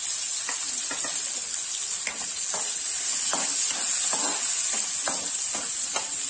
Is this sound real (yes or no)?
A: yes